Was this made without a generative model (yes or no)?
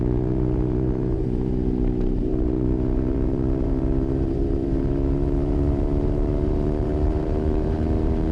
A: no